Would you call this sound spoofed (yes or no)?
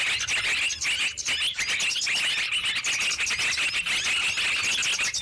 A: no